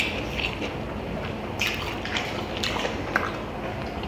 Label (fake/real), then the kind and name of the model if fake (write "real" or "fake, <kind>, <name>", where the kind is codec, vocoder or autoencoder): real